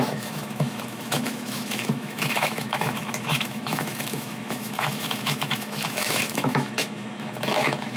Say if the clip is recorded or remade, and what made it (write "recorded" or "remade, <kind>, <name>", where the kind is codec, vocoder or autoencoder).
remade, autoencoder, DAC-VAE